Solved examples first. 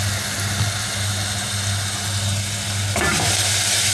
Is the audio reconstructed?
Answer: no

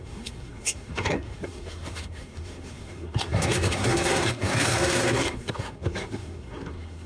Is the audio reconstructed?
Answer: yes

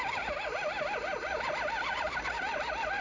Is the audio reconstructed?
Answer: no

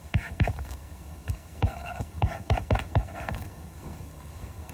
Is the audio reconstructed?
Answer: yes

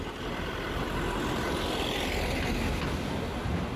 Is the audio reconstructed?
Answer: no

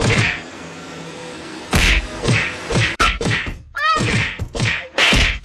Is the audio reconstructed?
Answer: yes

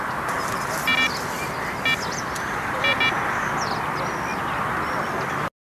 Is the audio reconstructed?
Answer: no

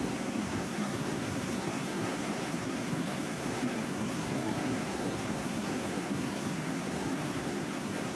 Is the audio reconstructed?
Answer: yes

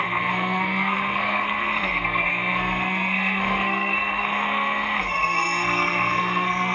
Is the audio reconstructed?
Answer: yes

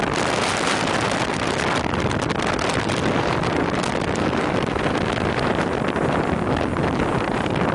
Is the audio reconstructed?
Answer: no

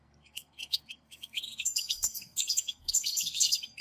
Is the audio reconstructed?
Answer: yes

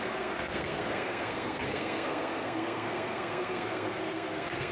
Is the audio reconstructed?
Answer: yes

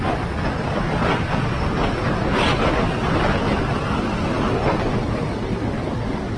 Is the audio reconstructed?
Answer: no